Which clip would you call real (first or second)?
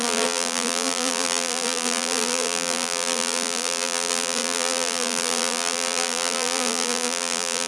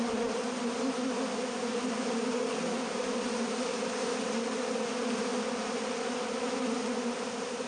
second